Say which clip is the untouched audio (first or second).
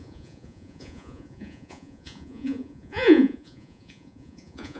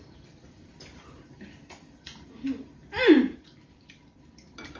second